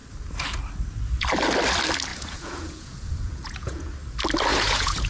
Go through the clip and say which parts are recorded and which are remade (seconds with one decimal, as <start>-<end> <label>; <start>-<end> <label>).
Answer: 0.0-2.1 recorded; 2.1-3.9 remade; 3.9-4.5 recorded; 4.5-5.1 remade